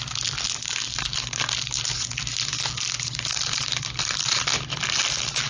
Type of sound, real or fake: real